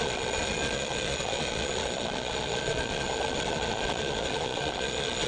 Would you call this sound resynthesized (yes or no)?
yes